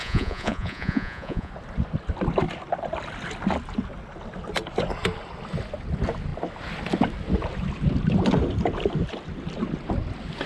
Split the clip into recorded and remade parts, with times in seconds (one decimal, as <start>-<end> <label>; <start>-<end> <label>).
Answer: 0.0-1.5 remade; 1.5-10.5 recorded